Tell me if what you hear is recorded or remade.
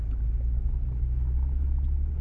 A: recorded